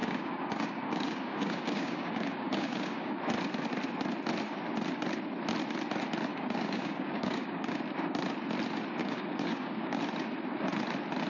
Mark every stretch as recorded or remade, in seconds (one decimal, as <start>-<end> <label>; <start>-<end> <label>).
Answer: 0.0-3.2 remade; 3.2-6.3 recorded; 6.3-7.8 remade; 7.8-9.0 recorded; 9.0-10.0 remade; 10.0-11.3 recorded